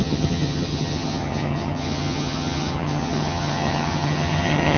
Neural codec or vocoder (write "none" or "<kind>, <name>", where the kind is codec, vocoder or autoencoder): vocoder, HiFi-GAN